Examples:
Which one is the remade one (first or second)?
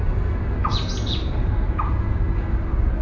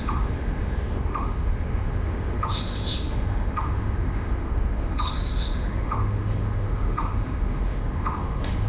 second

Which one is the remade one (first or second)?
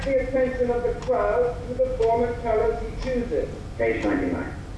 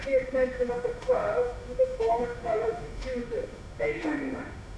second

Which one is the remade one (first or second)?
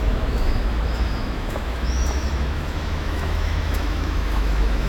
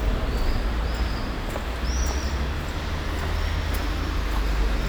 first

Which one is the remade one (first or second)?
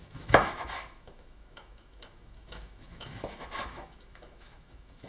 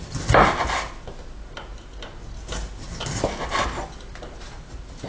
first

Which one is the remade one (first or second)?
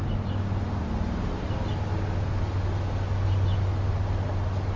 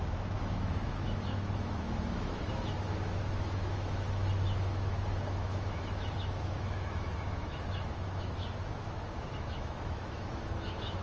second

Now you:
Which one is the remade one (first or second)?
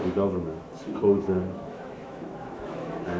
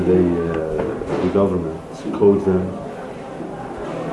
first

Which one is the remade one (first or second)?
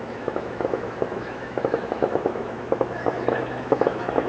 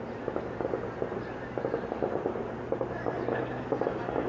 first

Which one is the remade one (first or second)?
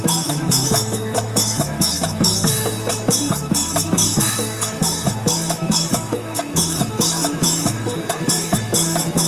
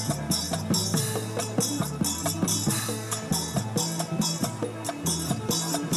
first